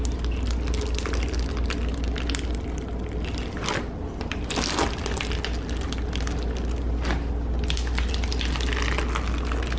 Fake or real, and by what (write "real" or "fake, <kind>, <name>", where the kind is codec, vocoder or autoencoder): real